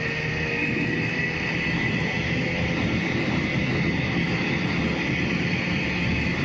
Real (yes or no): yes